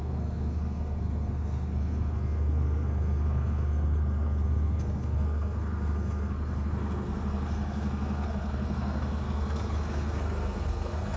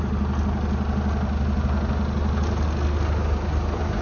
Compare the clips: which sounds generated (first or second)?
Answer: first